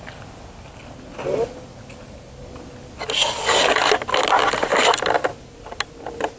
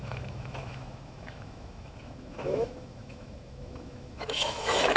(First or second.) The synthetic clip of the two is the second